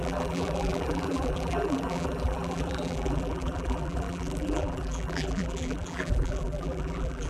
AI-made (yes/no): yes